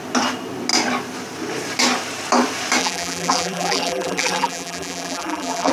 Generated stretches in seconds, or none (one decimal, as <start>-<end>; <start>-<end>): 2.8-5.7